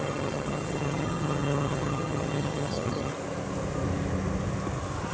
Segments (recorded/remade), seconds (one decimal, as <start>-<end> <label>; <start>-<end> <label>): 0.0-3.1 remade; 3.1-5.1 recorded